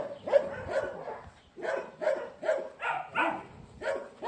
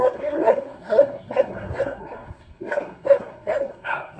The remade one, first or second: second